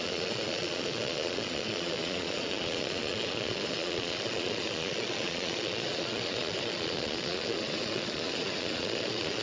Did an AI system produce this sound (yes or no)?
yes